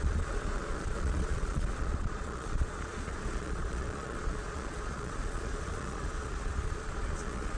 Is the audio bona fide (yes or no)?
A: no